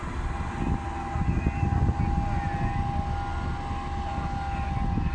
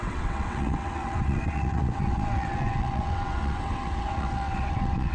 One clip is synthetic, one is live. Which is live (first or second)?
first